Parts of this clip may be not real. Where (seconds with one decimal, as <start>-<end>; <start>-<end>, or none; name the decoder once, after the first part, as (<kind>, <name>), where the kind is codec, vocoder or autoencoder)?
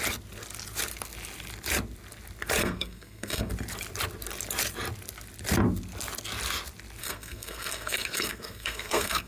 2.6-3.5 (codec, SNAC); 7.0-9.3